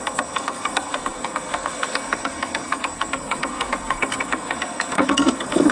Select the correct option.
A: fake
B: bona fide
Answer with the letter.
A